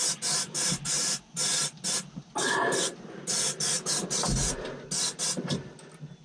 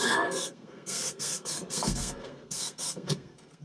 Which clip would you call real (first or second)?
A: first